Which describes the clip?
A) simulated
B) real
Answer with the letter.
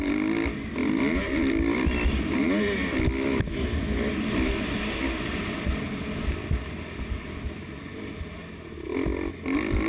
B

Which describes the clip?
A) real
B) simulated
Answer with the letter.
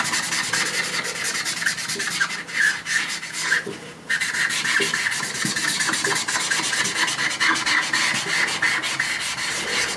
A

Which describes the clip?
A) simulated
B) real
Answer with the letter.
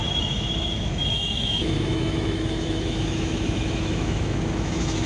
A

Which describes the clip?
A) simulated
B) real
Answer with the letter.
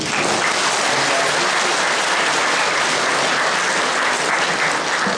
B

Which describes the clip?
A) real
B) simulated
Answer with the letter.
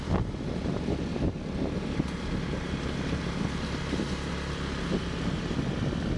A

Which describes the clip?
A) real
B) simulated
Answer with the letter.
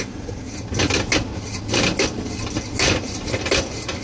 A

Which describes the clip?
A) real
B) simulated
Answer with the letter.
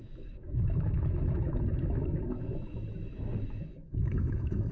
B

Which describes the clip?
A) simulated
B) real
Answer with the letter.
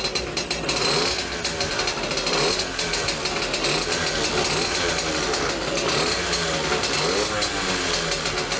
B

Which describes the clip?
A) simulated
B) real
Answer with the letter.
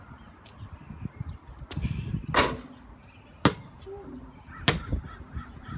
B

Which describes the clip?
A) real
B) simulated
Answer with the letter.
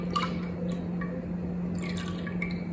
A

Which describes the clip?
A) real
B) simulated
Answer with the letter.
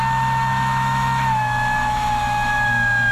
B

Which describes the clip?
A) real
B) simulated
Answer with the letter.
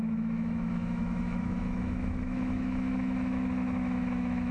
B